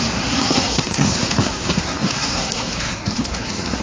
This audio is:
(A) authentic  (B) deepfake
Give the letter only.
B